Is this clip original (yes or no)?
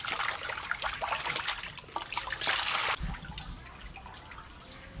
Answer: yes